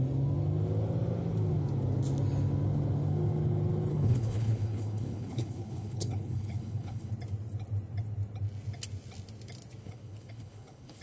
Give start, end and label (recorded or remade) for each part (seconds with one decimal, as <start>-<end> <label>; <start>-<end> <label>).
0.0-3.9 recorded; 3.9-7.1 remade; 7.1-9.8 recorded; 9.8-11.0 remade